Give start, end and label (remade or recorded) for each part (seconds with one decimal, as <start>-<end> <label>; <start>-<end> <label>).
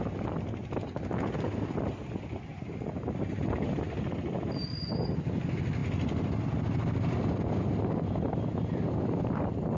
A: 0.0-9.8 recorded